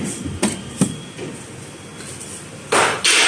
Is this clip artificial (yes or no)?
no